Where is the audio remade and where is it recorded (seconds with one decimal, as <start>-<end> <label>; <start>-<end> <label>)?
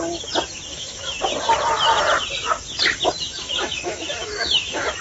0.0-0.7 recorded; 0.7-1.3 remade; 1.3-3.3 recorded; 3.3-5.0 remade